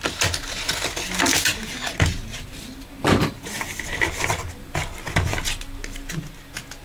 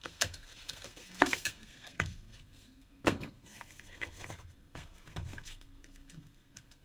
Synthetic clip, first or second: second